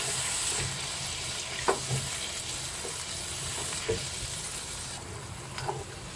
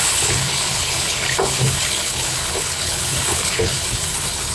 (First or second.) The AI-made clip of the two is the second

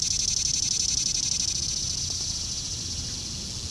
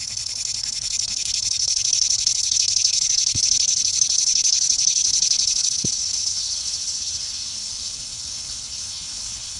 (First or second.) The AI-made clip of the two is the second